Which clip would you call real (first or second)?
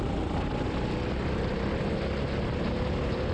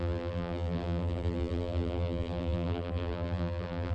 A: first